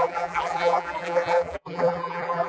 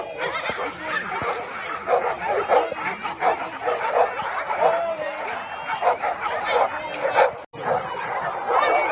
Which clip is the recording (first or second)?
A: second